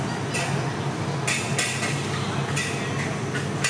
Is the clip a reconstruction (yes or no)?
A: no